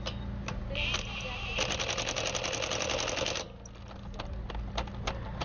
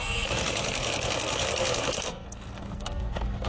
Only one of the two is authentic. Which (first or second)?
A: first